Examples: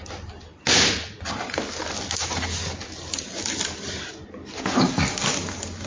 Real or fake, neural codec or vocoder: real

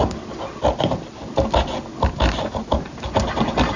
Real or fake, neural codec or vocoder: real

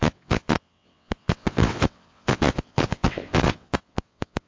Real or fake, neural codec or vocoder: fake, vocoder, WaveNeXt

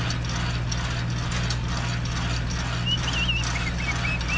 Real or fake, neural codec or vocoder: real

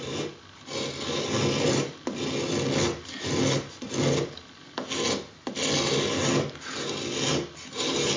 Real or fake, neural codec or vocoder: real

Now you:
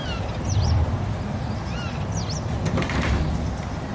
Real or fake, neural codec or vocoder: real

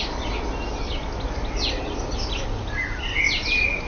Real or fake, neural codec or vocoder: real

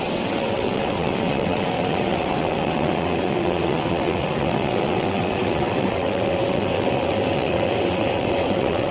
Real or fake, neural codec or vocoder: fake, vocoder, WaveNeXt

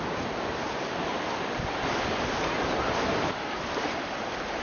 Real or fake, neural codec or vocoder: real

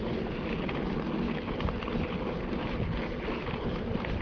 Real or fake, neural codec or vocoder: real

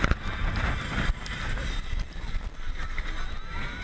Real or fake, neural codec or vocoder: real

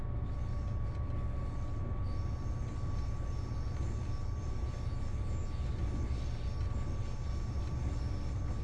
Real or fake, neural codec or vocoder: real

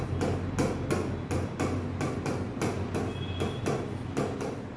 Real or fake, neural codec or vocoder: real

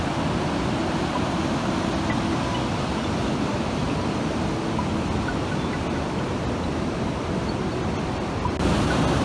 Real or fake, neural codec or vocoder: real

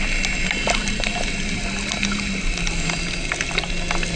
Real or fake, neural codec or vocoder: real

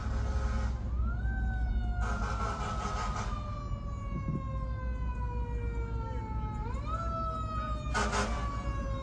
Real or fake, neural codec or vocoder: real